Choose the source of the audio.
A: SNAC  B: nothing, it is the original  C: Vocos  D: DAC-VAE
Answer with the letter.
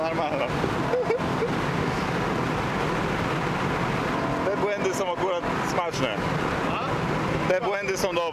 B